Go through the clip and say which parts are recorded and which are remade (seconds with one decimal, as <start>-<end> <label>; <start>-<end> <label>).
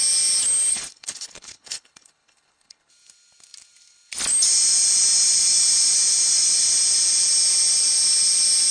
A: 0.0-0.7 recorded; 0.7-2.9 remade; 2.9-8.7 recorded